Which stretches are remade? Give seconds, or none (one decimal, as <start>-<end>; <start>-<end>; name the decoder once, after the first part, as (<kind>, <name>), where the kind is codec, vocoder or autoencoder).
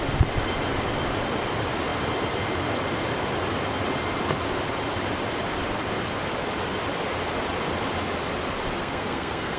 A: 8.8-9.6 (codec, SNAC)